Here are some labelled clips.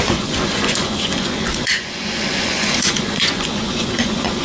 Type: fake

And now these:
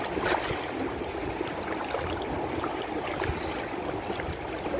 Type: real